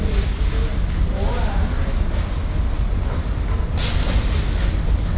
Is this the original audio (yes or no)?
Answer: yes